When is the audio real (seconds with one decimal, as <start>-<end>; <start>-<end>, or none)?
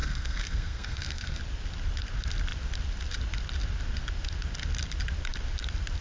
1.4-6.0